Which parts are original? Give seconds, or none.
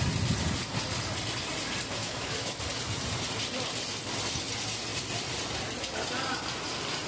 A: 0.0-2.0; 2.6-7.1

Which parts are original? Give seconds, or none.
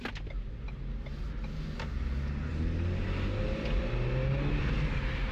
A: 0.0-5.3